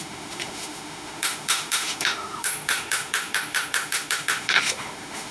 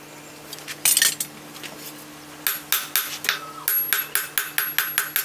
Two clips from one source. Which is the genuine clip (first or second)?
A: second